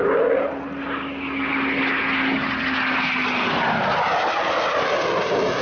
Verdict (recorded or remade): recorded